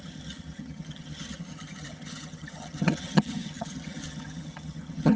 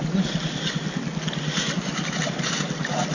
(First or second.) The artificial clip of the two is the first